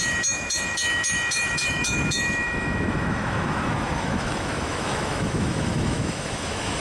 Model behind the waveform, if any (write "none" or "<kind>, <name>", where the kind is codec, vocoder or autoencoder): autoencoder, DAC-VAE